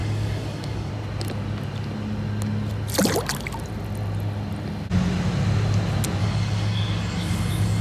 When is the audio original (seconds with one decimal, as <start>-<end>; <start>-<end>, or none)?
0.9-6.2